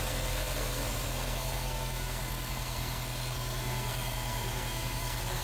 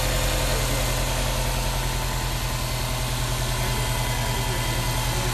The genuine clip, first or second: second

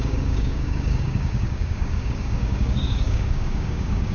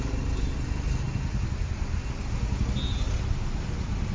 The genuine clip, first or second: second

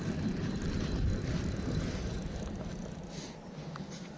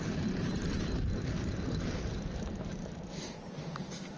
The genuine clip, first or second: first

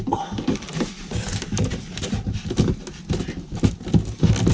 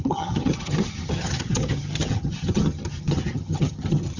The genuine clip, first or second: first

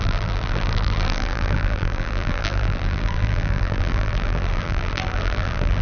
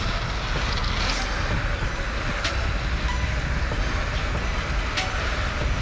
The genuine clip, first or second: second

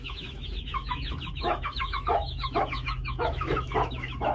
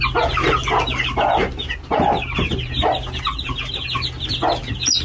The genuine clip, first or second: second